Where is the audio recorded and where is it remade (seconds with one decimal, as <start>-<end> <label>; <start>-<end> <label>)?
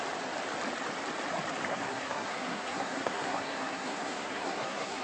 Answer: 0.0-1.7 recorded; 1.7-5.0 remade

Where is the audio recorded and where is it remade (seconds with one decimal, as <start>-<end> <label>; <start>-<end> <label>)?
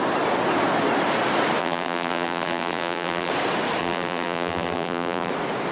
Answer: 0.0-1.6 recorded; 1.6-3.3 remade; 3.3-3.8 recorded; 3.8-5.3 remade; 5.3-5.7 recorded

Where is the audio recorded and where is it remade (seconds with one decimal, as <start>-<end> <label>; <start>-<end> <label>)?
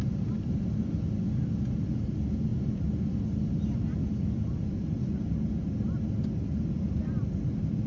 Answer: 0.0-7.9 recorded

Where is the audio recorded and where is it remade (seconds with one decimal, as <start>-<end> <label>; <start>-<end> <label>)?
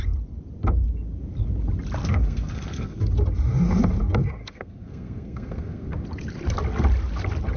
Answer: 0.0-2.0 recorded; 2.0-3.0 remade; 3.0-4.4 recorded; 4.4-5.9 remade; 5.9-7.6 recorded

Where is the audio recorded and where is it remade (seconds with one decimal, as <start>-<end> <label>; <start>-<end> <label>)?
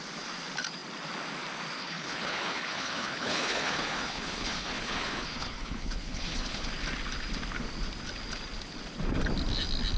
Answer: 0.0-1.8 recorded; 1.8-6.7 remade; 6.7-10.0 recorded